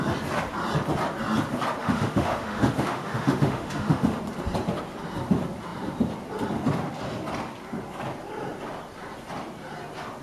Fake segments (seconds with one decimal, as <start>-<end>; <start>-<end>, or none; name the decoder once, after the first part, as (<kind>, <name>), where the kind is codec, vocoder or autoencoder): 1.8-4.2 (autoencoder, DAC-VAE)